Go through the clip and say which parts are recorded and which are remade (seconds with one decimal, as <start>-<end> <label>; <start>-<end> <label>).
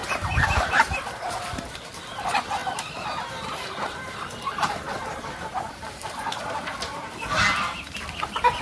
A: 0.0-1.4 remade; 1.4-2.6 recorded; 2.6-6.4 remade; 6.4-8.6 recorded